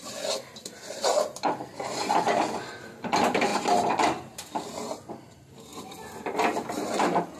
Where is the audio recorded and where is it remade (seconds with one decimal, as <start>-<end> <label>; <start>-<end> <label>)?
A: 0.0-7.4 recorded